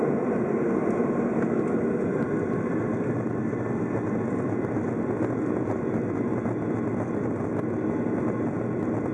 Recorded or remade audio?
recorded